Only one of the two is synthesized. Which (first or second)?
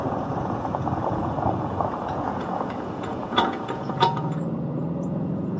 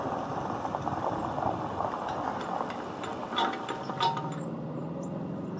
first